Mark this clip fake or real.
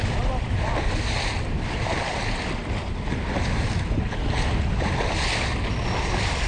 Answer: real